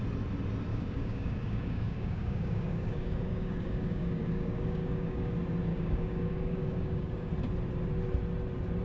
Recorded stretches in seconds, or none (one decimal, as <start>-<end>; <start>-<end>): 0.0-0.7; 5.3-5.7; 7.3-8.8